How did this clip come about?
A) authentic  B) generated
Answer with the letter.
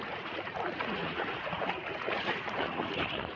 B